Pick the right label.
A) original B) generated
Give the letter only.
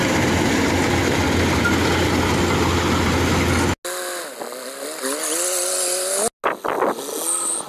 A